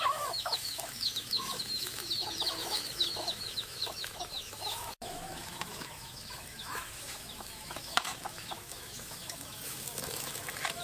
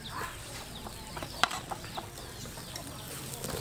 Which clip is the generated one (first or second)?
first